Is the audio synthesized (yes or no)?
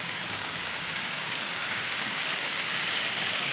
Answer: yes